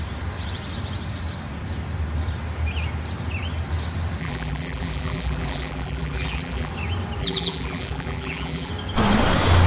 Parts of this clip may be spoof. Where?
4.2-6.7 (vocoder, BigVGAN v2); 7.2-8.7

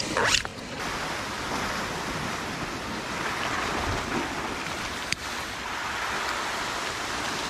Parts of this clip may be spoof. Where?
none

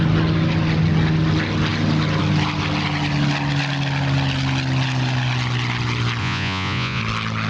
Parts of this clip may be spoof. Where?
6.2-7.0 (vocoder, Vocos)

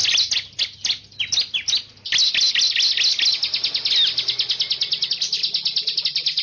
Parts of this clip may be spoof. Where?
none

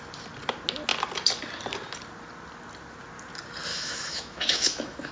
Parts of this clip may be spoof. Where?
3.7-5.1 (autoencoder, DAC-VAE)